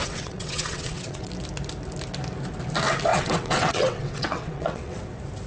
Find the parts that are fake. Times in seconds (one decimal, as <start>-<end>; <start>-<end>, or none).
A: 0.0-1.3; 3.1-5.0